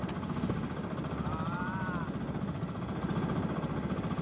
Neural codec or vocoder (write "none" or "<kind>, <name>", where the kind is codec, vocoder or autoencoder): none